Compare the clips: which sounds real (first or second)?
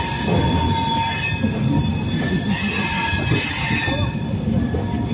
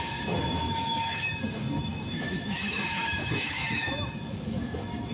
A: first